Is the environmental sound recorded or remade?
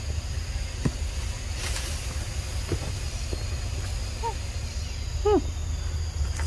recorded